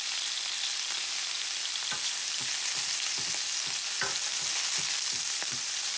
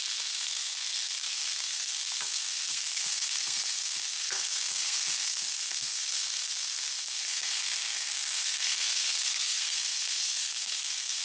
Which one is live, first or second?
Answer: first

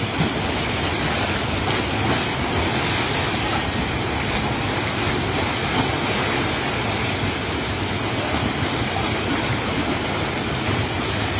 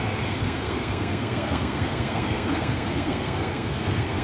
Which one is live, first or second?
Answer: first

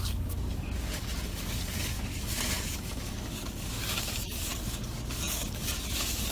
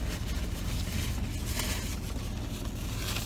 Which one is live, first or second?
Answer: second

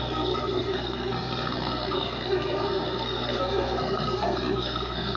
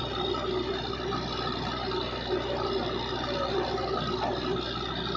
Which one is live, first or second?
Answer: second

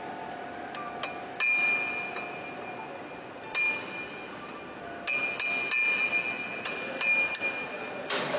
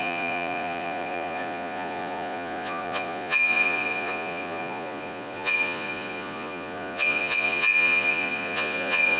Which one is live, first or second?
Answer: first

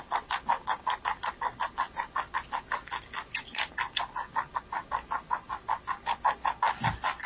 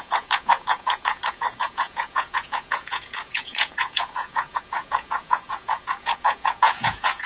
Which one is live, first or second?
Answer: first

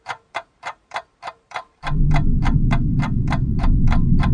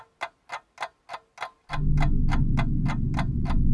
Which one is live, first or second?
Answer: second